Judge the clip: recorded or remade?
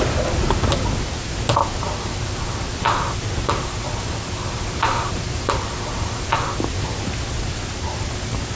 recorded